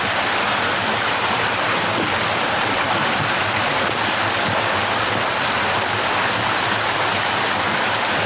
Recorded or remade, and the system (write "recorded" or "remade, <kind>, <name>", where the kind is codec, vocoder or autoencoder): recorded